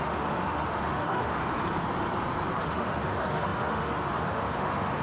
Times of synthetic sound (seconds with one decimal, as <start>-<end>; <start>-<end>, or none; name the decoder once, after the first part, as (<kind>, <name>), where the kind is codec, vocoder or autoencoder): 0.0-1.4 (autoencoder, DAC-VAE); 2.6-5.0